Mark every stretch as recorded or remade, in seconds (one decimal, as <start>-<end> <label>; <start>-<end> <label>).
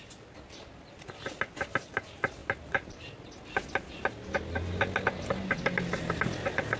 0.0-6.8 recorded